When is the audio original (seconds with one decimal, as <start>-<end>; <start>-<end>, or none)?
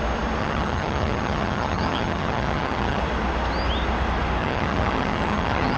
0.0-0.4; 3.0-4.4